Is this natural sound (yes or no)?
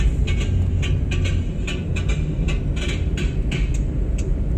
yes